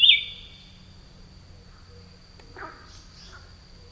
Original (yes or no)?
yes